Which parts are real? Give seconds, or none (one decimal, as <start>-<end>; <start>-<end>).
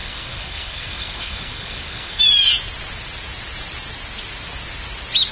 2.2-5.3